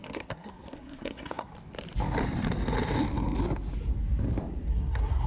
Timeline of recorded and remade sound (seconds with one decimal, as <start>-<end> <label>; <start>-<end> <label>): 0.0-1.5 remade; 1.5-4.7 recorded; 4.7-5.3 remade

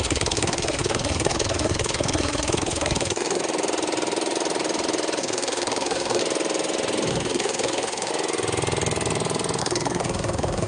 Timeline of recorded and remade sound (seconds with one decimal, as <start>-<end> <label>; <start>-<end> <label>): 0.0-3.4 remade; 3.4-5.2 recorded; 5.2-6.2 remade; 6.2-7.1 recorded; 7.1-8.1 remade; 8.1-9.6 recorded; 9.6-10.7 remade

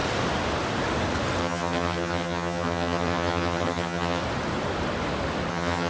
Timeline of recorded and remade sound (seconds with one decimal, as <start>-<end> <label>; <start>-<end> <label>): 0.0-1.4 recorded; 1.4-4.2 remade; 4.2-5.5 recorded; 5.5-5.9 remade

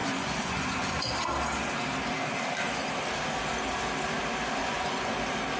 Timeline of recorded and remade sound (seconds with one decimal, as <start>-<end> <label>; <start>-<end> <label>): 0.0-1.1 remade; 1.1-4.6 recorded; 4.6-5.1 remade; 5.1-5.6 recorded

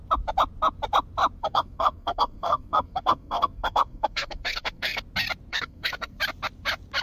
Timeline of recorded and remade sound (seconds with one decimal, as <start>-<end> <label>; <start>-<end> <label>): 0.0-1.4 recorded; 1.4-5.0 remade; 5.0-5.5 recorded; 5.5-6.2 remade; 6.2-7.0 recorded

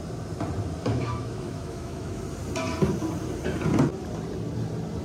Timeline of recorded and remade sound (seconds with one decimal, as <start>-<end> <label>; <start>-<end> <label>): 0.0-0.9 recorded; 0.9-2.2 remade; 2.2-5.0 recorded

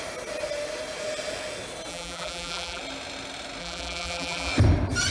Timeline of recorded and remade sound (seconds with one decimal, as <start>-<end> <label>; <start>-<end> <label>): 0.0-1.9 recorded; 1.9-2.8 remade; 2.8-3.6 recorded; 3.6-4.5 remade; 4.5-5.1 recorded